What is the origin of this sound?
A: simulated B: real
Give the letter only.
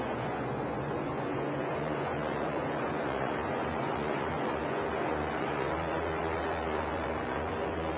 A